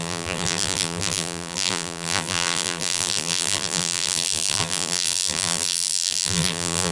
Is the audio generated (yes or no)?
yes